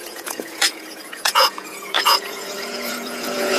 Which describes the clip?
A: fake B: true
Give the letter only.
A